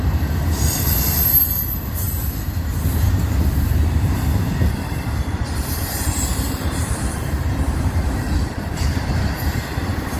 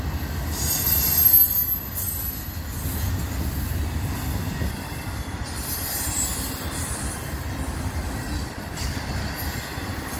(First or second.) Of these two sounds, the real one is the second